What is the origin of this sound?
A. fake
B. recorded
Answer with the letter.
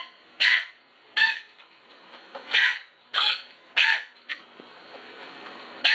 A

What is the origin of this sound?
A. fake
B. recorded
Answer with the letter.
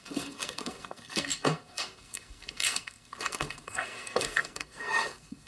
A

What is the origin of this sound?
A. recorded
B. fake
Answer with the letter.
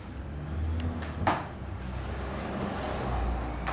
A